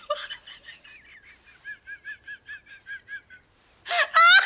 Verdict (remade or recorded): recorded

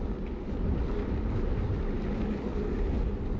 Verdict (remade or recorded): recorded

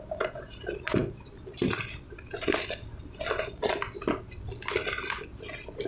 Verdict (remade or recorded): recorded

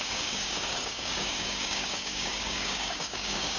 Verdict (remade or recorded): remade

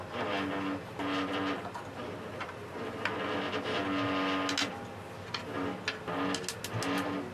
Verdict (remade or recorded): recorded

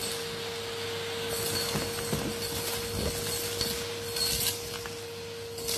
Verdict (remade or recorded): recorded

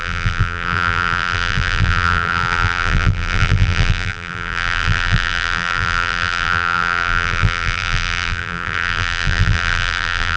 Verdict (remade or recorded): remade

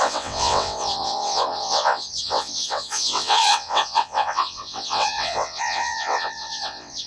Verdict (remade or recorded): remade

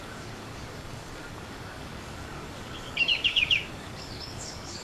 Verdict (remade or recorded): remade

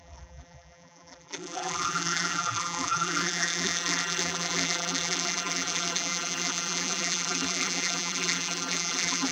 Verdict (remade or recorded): remade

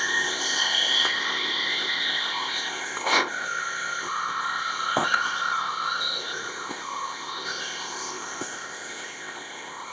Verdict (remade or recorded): remade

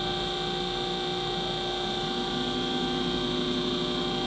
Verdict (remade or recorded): recorded